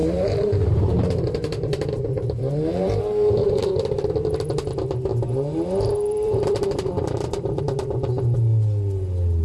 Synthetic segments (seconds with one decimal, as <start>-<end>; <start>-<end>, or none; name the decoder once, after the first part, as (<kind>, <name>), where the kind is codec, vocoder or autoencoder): 0.0-4.1 (vocoder, BigVGAN v2); 5.1-7.6